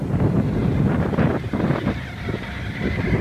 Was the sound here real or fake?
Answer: real